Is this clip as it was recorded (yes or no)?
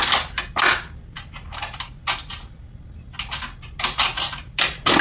yes